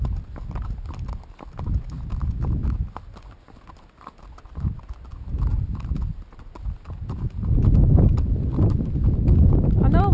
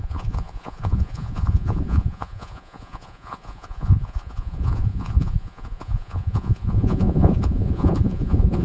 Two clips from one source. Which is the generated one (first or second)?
second